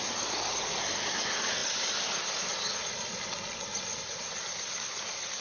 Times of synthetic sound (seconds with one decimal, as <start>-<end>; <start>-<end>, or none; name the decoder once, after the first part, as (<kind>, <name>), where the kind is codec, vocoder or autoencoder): none